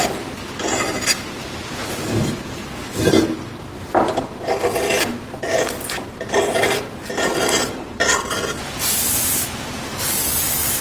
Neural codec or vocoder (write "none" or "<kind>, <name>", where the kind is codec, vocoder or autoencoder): none